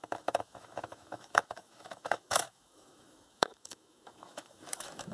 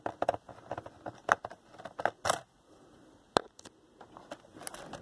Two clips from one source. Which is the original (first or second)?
second